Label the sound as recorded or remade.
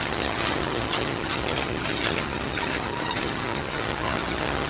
remade